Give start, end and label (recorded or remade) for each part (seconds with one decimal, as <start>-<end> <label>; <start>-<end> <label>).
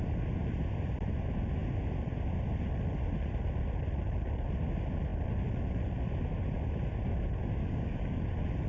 0.0-7.6 recorded; 7.6-8.2 remade; 8.2-8.7 recorded